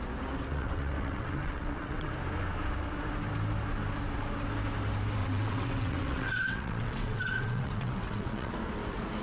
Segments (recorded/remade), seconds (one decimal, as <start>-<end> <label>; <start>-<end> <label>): 0.0-0.5 recorded; 0.5-2.1 remade; 2.1-5.2 recorded; 5.2-8.5 remade; 8.5-9.2 recorded